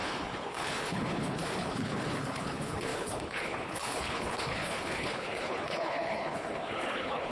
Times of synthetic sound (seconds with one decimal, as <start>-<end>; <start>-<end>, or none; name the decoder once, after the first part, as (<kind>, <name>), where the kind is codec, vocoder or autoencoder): 0.0-7.3 (codec, HILCodec)